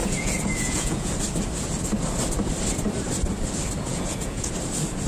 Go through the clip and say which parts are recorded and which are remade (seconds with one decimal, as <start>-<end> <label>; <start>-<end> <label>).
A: 0.0-1.1 remade; 1.1-3.9 recorded; 3.9-4.5 remade; 4.5-5.1 recorded